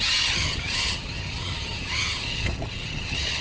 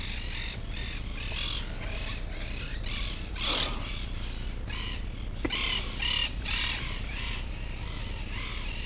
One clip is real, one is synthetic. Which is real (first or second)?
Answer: second